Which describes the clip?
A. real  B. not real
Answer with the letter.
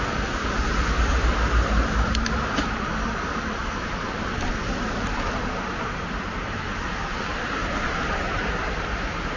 B